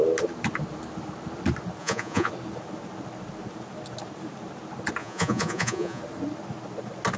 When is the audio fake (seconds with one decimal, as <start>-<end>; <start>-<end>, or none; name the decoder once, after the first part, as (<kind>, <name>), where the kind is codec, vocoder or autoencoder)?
1.8-2.3 (vocoder, Vocos); 5.0-6.0